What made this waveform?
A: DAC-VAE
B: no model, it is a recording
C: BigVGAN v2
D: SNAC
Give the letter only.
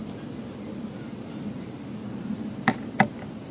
B